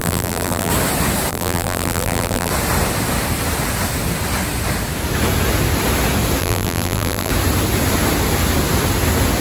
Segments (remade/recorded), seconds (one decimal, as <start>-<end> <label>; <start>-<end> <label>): 0.0-0.7 remade; 0.7-1.3 recorded; 1.3-2.5 remade; 2.5-6.4 recorded; 6.4-7.3 remade; 7.3-9.4 recorded